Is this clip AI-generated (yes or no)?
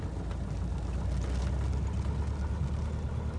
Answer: no